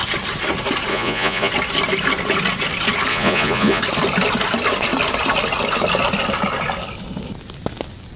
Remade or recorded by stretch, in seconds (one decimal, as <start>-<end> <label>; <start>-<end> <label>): 0.0-0.9 recorded; 0.9-1.5 remade; 1.5-3.1 recorded; 3.1-3.8 remade; 3.8-8.2 recorded